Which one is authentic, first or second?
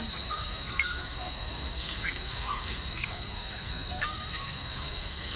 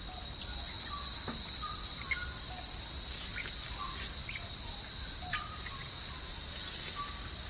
second